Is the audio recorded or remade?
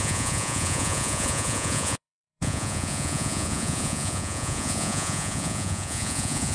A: remade